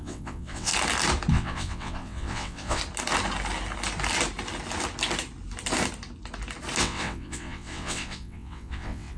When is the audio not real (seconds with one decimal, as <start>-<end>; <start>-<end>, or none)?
0.0-0.7; 1.3-2.8; 6.8-9.2